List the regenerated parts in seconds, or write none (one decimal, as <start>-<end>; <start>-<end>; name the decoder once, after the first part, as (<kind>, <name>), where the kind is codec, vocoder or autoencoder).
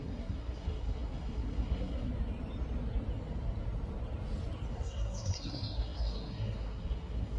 0.0-2.1 (codec, SNAC); 4.7-7.4